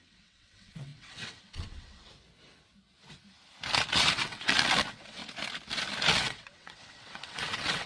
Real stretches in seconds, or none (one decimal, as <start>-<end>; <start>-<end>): 2.1-4.1; 5.2-6.1